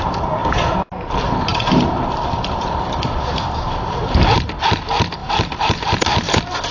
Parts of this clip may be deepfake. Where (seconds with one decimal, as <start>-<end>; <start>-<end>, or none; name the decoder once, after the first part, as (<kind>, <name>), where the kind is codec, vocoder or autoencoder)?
1.5-3.5 (vocoder, BigVGAN v2); 5.2-5.9